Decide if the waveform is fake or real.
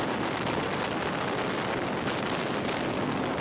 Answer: real